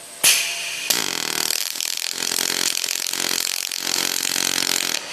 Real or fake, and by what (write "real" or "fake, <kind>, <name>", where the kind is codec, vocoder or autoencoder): real